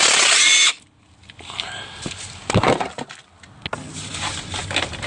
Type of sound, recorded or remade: recorded